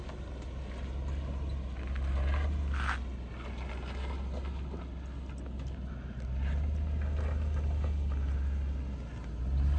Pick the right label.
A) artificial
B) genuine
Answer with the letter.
B